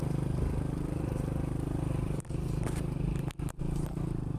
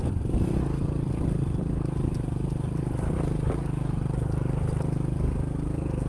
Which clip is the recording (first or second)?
second